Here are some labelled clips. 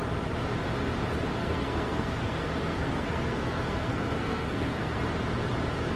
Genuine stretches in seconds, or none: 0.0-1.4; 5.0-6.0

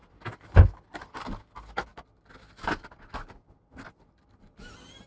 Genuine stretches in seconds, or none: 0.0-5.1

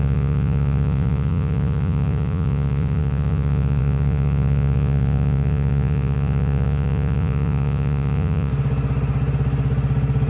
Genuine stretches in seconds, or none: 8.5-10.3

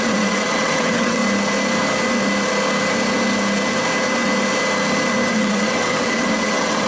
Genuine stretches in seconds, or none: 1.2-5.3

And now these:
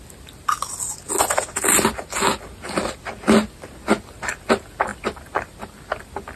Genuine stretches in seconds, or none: 0.0-6.4